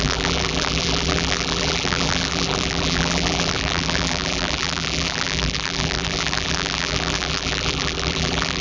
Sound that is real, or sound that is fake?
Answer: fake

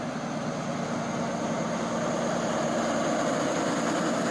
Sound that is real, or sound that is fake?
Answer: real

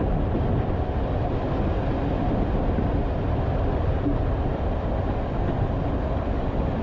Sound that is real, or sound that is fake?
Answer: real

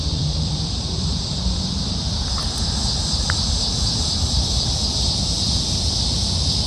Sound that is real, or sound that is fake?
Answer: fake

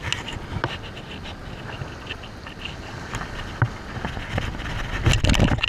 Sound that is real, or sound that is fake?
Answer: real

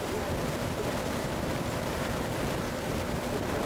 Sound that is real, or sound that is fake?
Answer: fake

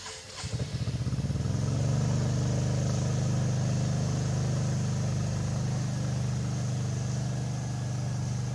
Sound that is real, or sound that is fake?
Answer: real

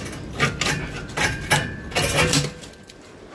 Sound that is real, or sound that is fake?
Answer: real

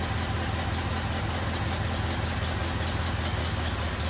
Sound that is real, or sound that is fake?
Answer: real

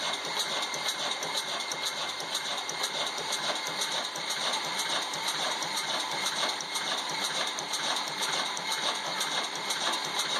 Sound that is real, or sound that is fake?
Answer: fake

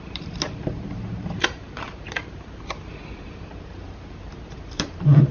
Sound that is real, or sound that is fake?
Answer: fake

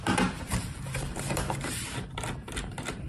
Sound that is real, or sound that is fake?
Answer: fake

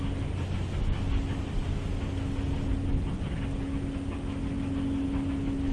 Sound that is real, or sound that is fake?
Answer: real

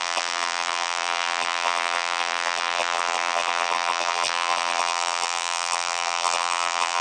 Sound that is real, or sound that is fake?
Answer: fake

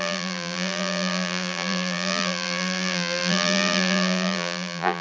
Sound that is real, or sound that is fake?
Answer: fake